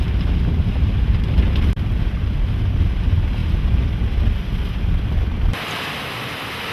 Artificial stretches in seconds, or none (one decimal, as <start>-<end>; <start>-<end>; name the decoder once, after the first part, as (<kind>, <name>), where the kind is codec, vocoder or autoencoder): none